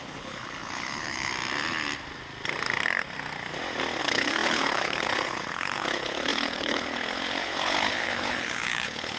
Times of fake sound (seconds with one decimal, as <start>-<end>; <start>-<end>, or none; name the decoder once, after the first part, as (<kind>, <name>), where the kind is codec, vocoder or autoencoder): 0.0-1.3 (codec, HILCodec); 4.0-9.2